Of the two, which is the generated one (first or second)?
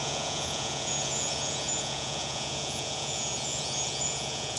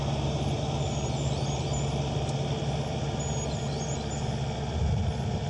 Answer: first